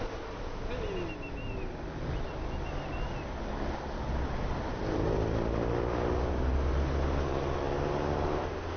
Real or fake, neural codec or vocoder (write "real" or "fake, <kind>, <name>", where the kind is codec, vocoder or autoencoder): real